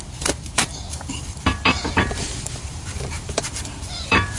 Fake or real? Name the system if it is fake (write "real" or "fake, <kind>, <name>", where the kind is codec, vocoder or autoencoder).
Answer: fake, vocoder, BigVGAN v2